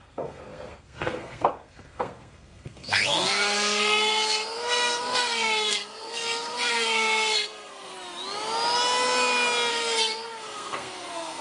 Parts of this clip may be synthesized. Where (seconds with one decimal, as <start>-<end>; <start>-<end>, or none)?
0.0-7.9; 9.7-11.4